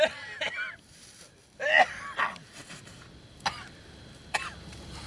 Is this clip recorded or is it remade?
recorded